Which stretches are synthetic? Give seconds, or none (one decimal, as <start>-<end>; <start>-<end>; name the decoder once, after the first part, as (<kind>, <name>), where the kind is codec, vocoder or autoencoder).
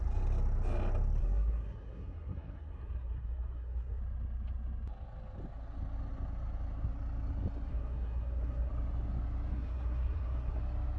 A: 1.2-4.0 (codec, SNAC); 7.7-8.7; 9.5-10.6